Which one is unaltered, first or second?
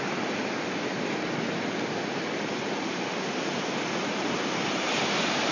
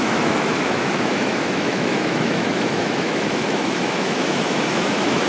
first